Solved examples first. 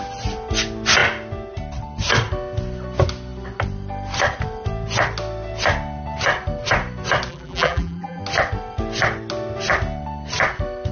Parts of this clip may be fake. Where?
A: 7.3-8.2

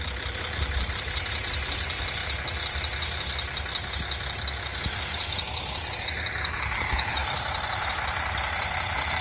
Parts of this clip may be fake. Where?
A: 0.0-2.2; 6.0-9.2